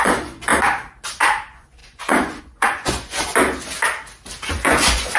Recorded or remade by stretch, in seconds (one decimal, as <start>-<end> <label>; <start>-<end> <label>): 0.0-0.5 remade; 0.5-1.2 recorded; 1.2-3.3 remade; 3.3-4.5 recorded; 4.5-5.2 remade